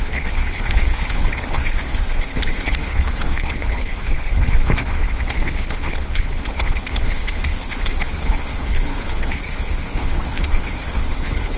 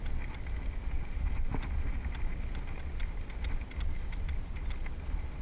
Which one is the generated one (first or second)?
first